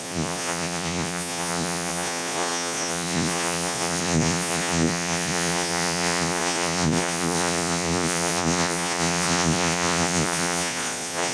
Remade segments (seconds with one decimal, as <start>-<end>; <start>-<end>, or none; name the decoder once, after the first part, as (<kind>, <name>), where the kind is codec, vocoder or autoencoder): 0.0-11.3 (vocoder, Vocos)

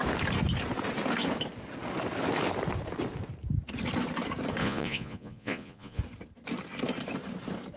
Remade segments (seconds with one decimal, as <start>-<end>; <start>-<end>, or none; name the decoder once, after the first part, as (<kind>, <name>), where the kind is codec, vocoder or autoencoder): 4.6-6.0 (vocoder, Vocos)

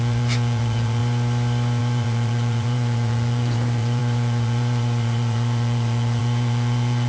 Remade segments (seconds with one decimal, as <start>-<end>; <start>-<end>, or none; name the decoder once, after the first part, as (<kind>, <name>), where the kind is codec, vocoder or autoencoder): 0.0-1.0 (vocoder, Vocos); 1.8-7.1

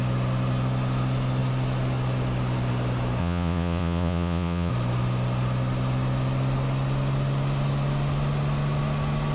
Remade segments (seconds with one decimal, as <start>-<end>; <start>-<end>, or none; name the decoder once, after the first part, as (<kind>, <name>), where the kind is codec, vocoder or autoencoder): 3.2-4.7 (vocoder, Vocos)

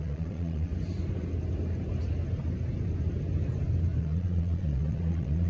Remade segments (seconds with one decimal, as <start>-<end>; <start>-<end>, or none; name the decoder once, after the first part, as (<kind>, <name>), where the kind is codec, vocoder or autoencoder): 0.0-0.7 (vocoder, Vocos); 4.0-5.5

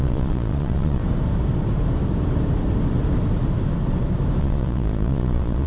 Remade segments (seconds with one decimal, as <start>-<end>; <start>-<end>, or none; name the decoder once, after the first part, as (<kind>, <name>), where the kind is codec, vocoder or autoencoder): 0.0-1.0 (vocoder, Vocos); 4.4-5.7

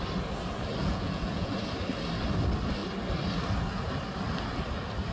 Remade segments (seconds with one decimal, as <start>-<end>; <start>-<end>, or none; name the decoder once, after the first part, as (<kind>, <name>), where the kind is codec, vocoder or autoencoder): 0.8-1.5 (vocoder, Vocos)

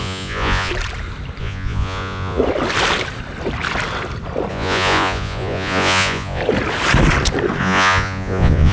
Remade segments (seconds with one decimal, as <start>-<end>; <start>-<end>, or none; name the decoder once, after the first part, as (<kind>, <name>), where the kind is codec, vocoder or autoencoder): 0.0-0.7 (vocoder, Vocos); 1.4-2.4; 4.5-6.4; 7.6-8.7